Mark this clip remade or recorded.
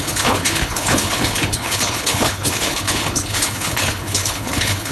remade